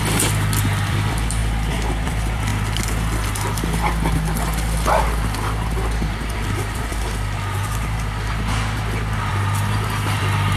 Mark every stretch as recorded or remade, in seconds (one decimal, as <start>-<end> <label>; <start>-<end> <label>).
0.0-1.4 remade; 1.4-1.9 recorded; 1.9-2.5 remade; 2.5-6.2 recorded; 6.2-6.9 remade; 6.9-9.3 recorded; 9.3-10.6 remade